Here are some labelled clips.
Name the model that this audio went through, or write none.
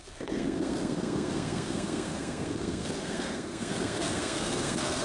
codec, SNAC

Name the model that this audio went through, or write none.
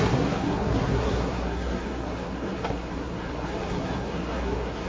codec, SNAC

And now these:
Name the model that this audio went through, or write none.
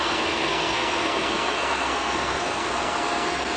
codec, SNAC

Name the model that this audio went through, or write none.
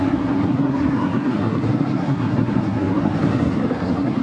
codec, SNAC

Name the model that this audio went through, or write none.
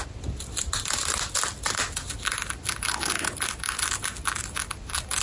none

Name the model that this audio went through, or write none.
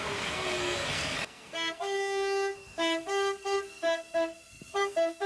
codec, SNAC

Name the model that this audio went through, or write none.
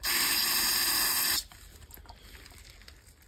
none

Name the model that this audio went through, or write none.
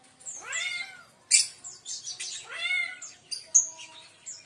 none